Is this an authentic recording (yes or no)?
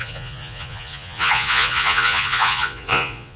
no